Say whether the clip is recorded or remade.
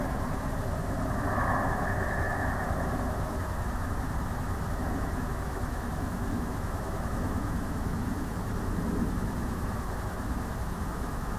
remade